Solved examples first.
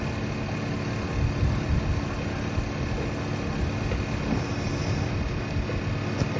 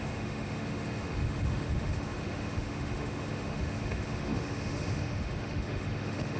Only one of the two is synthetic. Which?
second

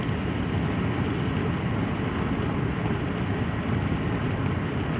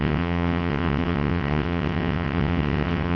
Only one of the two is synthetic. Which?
second